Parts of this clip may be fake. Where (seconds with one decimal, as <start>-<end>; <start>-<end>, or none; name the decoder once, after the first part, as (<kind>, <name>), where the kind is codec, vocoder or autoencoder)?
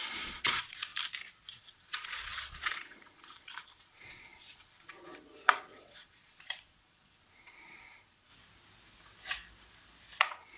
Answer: 0.0-0.9 (vocoder, Vocos); 1.5-8.3; 10.2-10.6